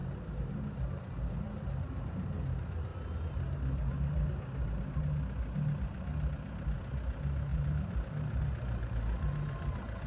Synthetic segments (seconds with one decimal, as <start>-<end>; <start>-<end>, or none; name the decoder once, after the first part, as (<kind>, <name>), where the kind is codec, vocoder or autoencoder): 7.5-8.4 (vocoder, BigVGAN v2); 8.8-10.1